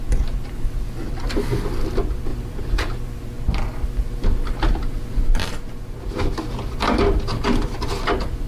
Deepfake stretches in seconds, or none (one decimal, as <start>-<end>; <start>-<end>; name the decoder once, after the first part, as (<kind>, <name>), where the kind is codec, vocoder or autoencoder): 2.3-2.9 (vocoder, BigVGAN v2); 5.4-6.1

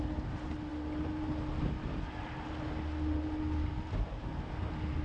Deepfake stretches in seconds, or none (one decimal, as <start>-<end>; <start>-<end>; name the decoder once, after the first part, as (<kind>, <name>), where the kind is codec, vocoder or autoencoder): none